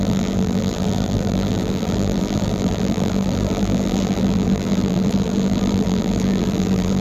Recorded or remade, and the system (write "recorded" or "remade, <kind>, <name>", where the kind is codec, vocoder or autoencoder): remade, vocoder, BigVGAN v2